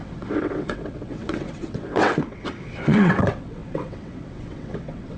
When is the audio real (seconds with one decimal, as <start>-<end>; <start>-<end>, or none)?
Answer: none